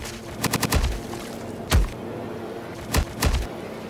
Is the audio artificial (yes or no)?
no